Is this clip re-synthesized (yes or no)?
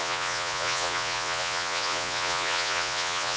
yes